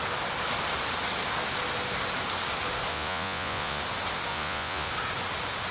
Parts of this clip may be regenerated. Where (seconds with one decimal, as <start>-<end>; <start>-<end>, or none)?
2.9-3.8; 4.3-4.9